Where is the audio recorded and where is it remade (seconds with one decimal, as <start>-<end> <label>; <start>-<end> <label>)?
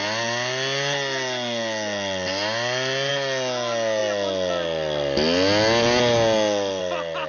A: 0.0-7.3 recorded